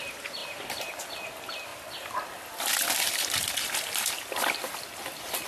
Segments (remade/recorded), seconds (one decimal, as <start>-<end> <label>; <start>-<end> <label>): 0.0-5.5 recorded